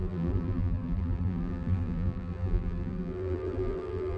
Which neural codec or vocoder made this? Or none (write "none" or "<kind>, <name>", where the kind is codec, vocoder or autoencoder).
vocoder, BigVGAN v2